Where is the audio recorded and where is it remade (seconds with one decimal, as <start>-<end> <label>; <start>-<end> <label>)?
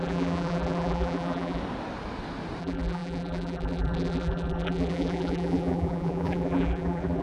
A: 0.0-1.6 remade; 1.6-2.6 recorded; 2.6-7.2 remade